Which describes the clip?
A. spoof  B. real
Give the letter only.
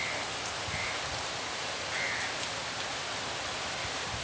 B